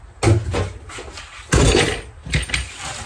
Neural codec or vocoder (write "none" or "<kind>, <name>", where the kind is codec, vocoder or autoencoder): none